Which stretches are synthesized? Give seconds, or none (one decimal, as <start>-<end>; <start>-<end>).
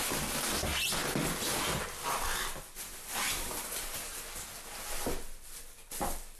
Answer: none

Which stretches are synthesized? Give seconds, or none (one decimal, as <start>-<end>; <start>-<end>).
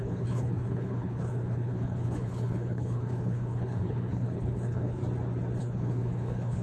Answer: 0.0-5.0; 5.6-6.6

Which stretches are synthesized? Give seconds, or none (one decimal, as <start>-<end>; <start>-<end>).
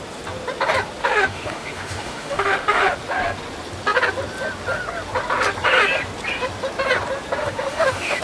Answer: 1.0-2.9; 7.4-8.2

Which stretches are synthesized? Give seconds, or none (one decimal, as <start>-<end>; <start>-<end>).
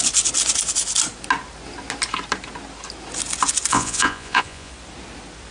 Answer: 3.7-4.7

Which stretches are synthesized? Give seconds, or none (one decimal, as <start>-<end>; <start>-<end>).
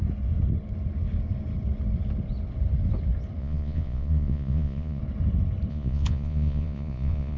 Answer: 3.4-5.0; 5.7-7.4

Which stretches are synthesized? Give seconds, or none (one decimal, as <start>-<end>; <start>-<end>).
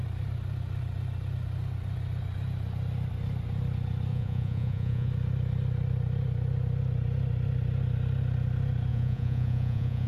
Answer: 4.1-5.1; 8.9-10.1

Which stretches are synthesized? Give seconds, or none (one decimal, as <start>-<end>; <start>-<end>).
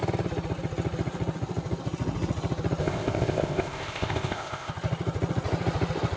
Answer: 2.8-4.7